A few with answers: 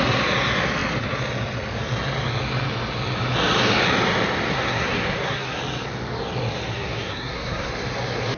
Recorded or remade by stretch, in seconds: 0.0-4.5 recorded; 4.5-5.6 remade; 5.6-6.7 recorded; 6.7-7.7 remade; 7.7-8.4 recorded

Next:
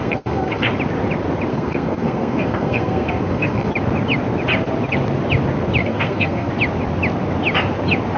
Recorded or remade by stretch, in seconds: 0.0-0.7 remade; 0.7-1.5 recorded; 1.5-3.7 remade; 3.7-5.8 recorded; 5.8-6.5 remade; 6.5-8.2 recorded

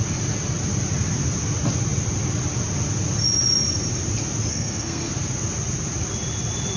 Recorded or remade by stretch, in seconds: 0.0-4.5 recorded; 4.5-5.1 remade; 5.1-6.8 recorded

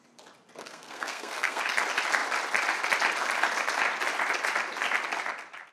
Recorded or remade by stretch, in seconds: 0.0-0.6 recorded; 0.6-1.6 remade; 1.6-5.7 recorded

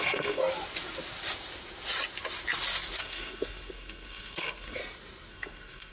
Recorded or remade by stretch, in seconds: 0.0-0.4 remade; 0.4-3.0 recorded; 3.0-4.8 remade; 4.8-5.3 recorded; 5.3-5.9 remade